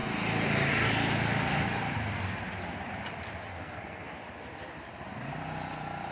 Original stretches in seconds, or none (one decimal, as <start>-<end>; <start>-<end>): 0.0-3.5; 4.1-6.1